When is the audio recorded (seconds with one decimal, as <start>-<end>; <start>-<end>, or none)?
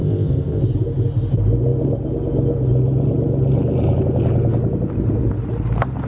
0.6-6.1